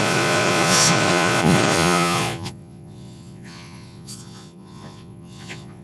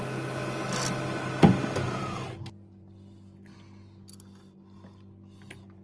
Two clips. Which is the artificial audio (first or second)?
first